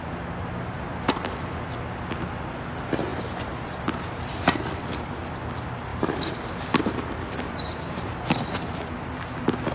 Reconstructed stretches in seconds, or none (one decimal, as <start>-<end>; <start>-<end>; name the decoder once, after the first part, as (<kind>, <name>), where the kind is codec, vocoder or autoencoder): 3.1-4.4 (vocoder, BigVGAN v2); 5.9-8.1